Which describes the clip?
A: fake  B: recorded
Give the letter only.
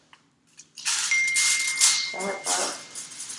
B